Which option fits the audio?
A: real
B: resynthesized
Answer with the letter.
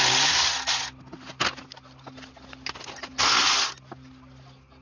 A